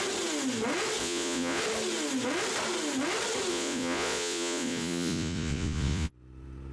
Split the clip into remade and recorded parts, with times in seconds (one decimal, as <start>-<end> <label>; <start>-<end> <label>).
0.0-1.0 recorded; 1.0-1.6 remade; 1.6-3.5 recorded; 3.5-6.1 remade; 6.1-6.7 recorded